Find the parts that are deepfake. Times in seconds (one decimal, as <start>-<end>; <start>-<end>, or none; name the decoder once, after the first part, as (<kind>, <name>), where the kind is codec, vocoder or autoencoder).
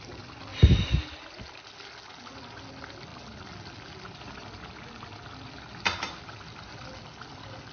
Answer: none